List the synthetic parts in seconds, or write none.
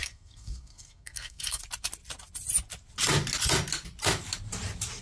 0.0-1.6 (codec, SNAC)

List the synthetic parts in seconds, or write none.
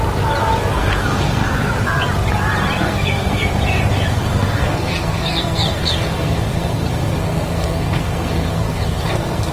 0.7-1.7 (codec, SNAC); 2.8-3.5; 4.1-9.5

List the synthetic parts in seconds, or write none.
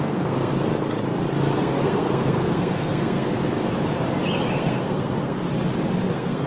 0.0-0.5 (codec, SNAC); 1.6-3.4; 4.5-5.4; 6.1-6.5